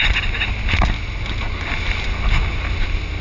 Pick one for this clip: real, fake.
real